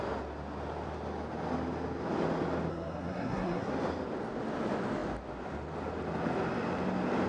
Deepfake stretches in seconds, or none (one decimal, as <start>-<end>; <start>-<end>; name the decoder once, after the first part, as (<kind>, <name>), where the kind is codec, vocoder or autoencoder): 2.7-3.7 (codec, SNAC)